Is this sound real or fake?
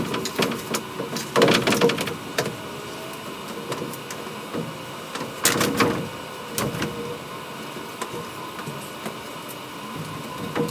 real